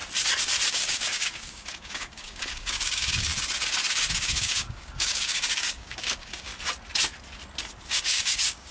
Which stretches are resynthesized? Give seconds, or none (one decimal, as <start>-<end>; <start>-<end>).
0.7-3.3; 4.1-6.5; 7.9-8.7